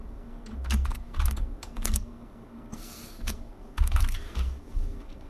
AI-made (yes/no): yes